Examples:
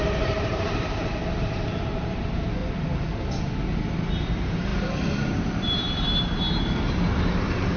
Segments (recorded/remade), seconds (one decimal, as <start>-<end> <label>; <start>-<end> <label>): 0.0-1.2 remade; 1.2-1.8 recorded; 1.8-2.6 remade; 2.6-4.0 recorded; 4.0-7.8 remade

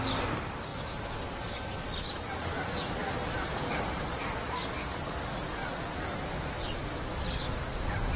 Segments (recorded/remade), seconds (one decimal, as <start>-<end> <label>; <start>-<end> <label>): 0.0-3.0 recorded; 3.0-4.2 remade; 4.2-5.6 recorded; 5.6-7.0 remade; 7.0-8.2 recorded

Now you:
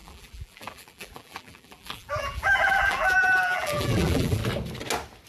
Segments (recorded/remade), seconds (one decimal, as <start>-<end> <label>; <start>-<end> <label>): 0.0-4.4 remade; 4.4-5.3 recorded